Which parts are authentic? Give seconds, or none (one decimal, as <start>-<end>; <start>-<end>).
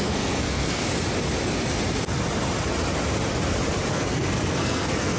0.8-3.9